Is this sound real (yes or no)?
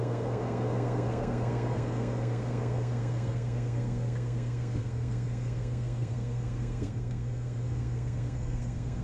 no